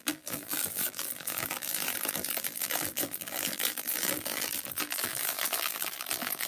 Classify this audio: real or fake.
fake